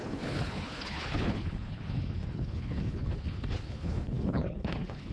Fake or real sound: fake